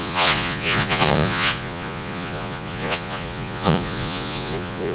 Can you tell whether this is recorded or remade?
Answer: remade